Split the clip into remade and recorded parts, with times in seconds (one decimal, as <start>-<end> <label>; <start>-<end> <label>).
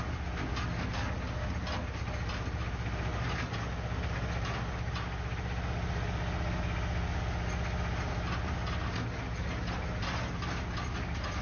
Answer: 0.0-11.4 recorded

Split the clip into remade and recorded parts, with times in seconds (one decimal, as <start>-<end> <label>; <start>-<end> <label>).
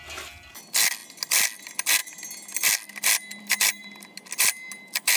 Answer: 0.0-5.2 recorded